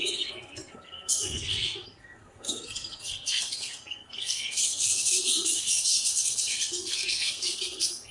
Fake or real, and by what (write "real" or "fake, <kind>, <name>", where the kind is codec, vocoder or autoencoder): fake, codec, SNAC